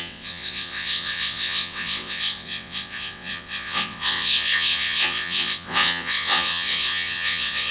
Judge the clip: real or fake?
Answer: fake